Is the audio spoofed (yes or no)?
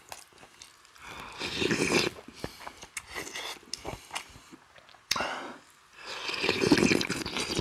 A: no